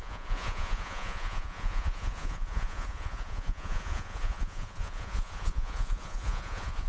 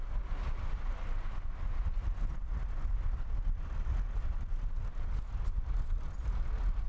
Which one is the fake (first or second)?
first